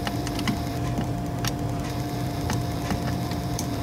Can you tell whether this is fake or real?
fake